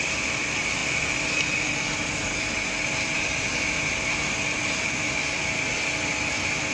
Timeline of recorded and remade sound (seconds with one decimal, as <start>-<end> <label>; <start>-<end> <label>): 0.0-6.7 recorded